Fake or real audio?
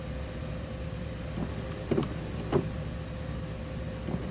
real